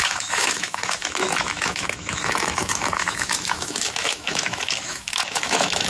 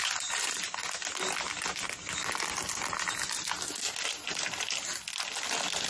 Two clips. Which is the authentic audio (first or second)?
second